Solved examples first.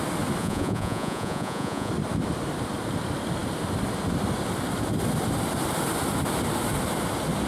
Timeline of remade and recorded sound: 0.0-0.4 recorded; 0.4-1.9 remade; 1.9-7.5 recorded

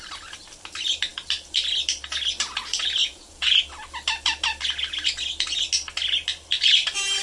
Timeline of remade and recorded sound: 0.0-3.0 recorded; 3.0-3.6 remade; 3.6-7.2 recorded

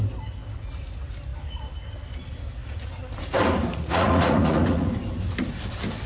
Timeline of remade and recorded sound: 0.0-3.6 recorded; 3.6-4.9 remade; 4.9-6.1 recorded

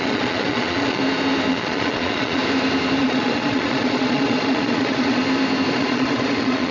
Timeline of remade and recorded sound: 0.0-1.0 remade; 1.0-1.5 recorded; 1.5-2.4 remade; 2.4-3.0 recorded; 3.0-5.2 remade; 5.2-5.7 recorded; 5.7-6.7 remade

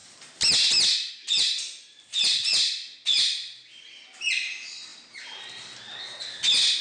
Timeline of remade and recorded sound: 0.0-6.8 recorded

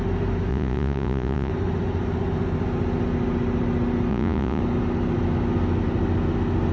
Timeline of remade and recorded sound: 0.0-0.5 recorded; 0.5-1.5 remade; 1.5-4.1 recorded; 4.1-4.6 remade; 4.6-6.7 recorded

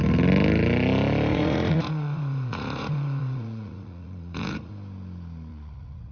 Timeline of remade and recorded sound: 0.0-1.3 recorded; 1.3-4.7 remade; 4.7-5.5 recorded; 5.5-6.1 remade